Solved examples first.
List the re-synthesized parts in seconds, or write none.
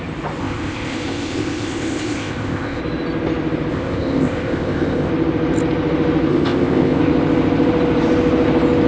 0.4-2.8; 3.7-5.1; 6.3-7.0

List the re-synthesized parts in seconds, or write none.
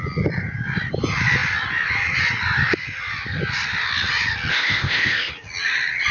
4.5-5.3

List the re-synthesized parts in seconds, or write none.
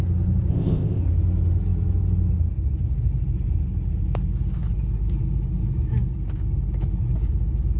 0.5-1.0